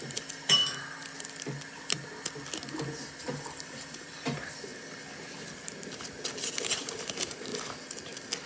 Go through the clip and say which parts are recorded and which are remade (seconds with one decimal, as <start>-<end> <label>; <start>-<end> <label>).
0.0-0.6 remade; 0.6-3.2 recorded; 3.2-4.7 remade; 4.7-6.4 recorded; 6.4-7.5 remade; 7.5-8.5 recorded